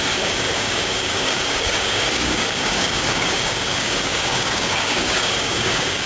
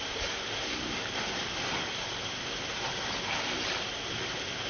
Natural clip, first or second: second